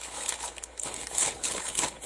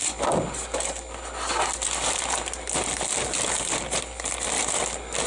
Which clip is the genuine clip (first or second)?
second